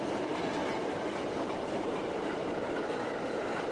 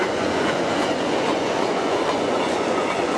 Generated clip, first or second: second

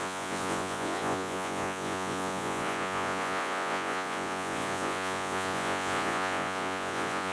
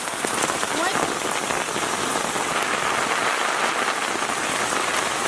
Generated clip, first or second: first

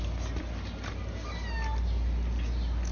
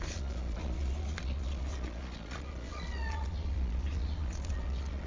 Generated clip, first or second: second